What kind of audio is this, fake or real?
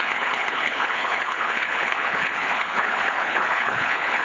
fake